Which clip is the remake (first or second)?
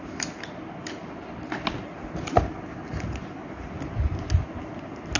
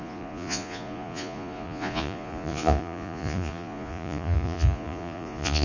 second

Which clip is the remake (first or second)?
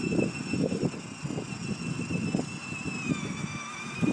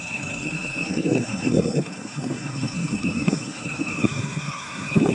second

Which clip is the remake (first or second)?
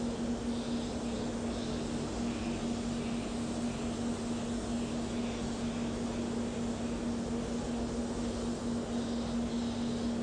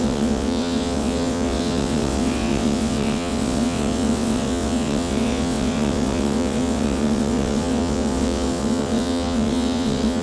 second